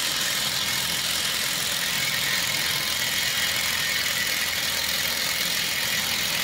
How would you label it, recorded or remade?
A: recorded